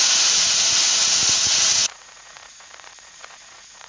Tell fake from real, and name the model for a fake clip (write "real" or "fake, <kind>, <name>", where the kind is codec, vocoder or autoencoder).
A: fake, vocoder, Vocos